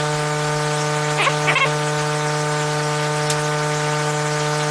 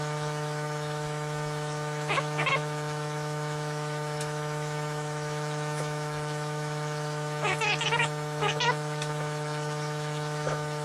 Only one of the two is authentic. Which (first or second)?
first